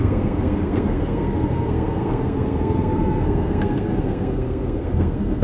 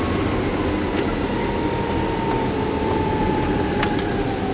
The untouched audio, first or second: second